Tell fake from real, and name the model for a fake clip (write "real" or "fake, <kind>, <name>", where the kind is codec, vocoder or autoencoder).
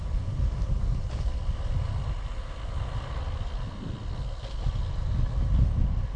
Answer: real